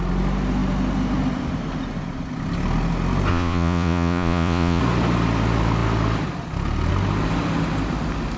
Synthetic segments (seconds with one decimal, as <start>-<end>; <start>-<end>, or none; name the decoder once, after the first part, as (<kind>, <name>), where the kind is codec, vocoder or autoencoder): 3.3-4.8 (vocoder, Vocos)